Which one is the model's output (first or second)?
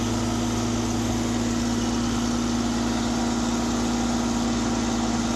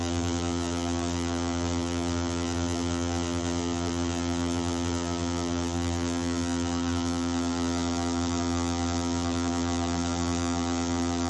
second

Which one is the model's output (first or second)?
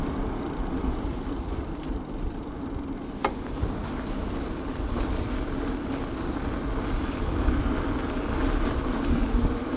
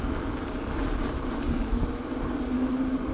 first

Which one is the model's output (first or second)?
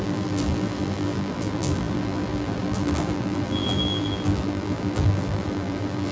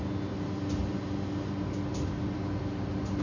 first